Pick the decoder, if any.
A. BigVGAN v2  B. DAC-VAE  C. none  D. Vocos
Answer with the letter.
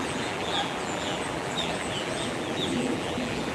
A